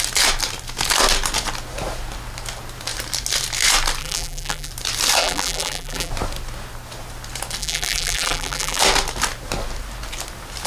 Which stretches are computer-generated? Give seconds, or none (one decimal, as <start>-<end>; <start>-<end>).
4.0-4.7; 5.2-6.1; 7.6-8.8